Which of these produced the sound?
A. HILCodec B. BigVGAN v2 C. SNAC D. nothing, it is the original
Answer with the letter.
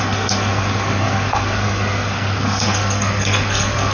C